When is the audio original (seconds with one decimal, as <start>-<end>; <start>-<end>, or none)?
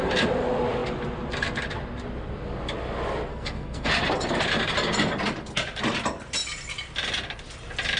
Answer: 0.0-3.3; 3.9-8.0